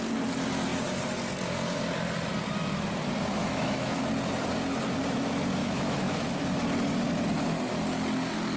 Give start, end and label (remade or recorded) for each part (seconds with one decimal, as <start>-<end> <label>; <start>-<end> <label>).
0.0-3.4 recorded; 3.4-4.0 remade; 4.0-5.6 recorded; 5.6-6.4 remade; 6.4-8.6 recorded